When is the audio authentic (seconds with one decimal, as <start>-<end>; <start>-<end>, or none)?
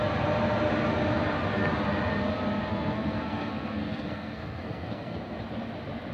0.0-2.7; 5.4-6.1